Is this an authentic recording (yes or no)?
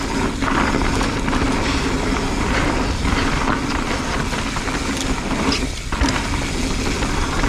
yes